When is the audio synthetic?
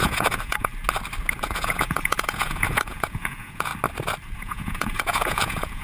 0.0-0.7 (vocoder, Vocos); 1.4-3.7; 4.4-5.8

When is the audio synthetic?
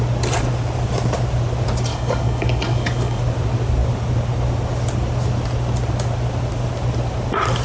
1.9-3.2 (codec, DAC)